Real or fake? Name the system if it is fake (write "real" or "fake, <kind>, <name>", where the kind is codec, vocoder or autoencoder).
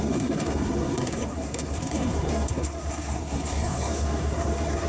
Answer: fake, codec, SNAC